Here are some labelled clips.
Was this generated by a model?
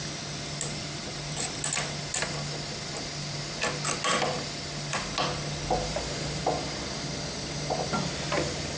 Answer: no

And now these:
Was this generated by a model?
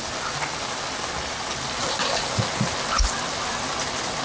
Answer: no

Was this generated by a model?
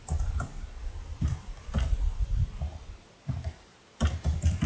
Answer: yes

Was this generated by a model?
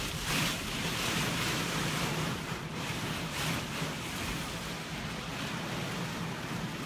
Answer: no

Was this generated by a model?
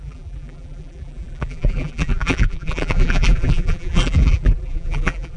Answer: yes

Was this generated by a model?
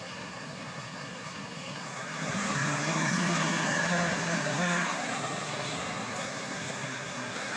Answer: yes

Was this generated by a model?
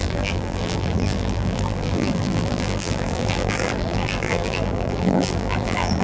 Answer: yes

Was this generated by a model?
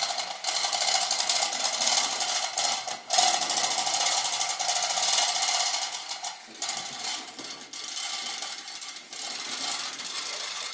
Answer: no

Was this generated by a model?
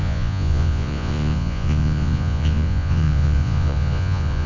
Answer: yes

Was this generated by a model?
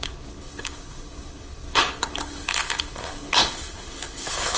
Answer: yes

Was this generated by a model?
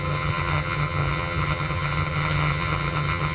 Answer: yes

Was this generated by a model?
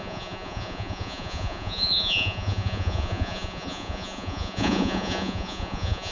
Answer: yes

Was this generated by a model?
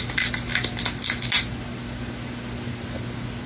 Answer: no